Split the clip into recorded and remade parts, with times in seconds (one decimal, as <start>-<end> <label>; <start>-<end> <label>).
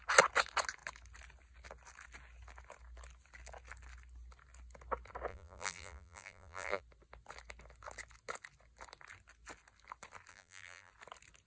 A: 0.0-5.3 recorded; 5.3-6.8 remade; 6.8-10.3 recorded; 10.3-10.9 remade; 10.9-11.5 recorded